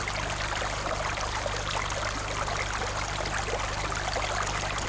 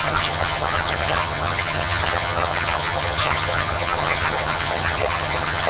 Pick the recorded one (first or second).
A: first